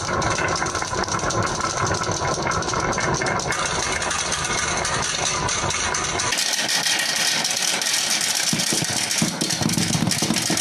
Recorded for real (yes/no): yes